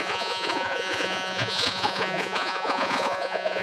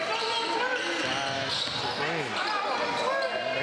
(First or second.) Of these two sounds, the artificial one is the first